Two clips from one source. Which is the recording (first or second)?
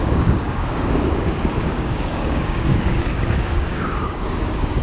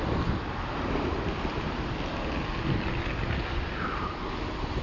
second